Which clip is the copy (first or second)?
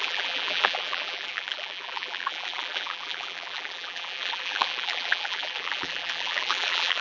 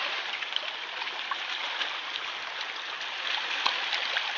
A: first